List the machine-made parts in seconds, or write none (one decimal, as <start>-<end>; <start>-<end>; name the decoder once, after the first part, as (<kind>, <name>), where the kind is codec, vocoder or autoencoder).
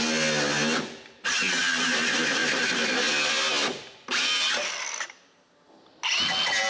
none